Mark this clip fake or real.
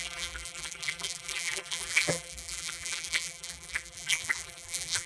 fake